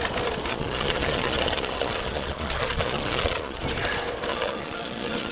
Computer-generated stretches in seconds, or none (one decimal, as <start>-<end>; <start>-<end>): 0.5-3.6; 4.3-5.3

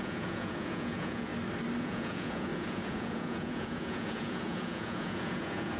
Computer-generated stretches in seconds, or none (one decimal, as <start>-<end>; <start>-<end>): 0.0-1.3; 1.8-5.8

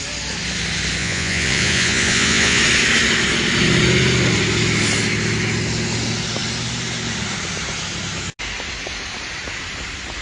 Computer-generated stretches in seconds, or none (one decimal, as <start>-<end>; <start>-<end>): 1.0-2.6

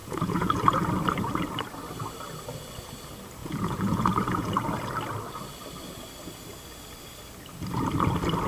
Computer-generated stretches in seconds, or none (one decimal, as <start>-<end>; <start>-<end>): 0.0-0.9; 3.4-4.5

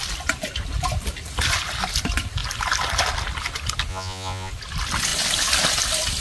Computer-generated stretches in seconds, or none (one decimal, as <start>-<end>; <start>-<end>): 3.9-4.5

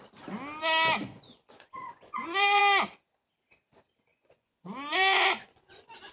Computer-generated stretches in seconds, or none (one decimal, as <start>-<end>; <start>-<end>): 1.0-2.6; 4.1-6.1